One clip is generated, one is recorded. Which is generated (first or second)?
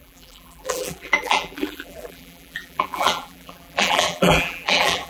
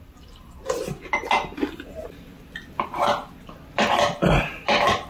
first